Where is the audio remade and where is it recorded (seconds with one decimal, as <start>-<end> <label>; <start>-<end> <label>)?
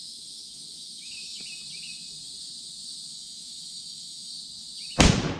0.0-1.4 remade; 1.4-3.1 recorded; 3.1-4.3 remade; 4.3-5.4 recorded